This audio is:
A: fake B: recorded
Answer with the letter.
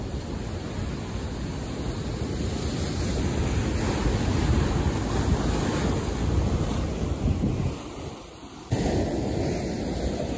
B